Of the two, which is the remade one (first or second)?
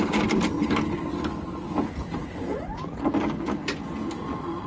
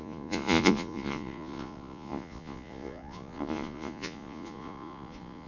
second